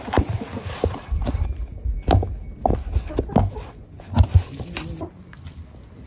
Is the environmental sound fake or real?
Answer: real